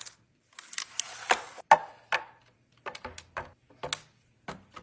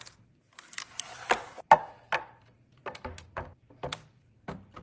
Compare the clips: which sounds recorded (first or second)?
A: first